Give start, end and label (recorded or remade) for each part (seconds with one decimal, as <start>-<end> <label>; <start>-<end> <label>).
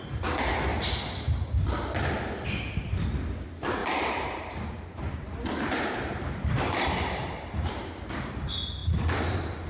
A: 0.0-3.8 recorded; 3.8-7.7 remade; 7.7-9.7 recorded